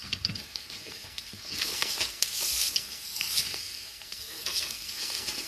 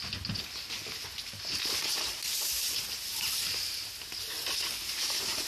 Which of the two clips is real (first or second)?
second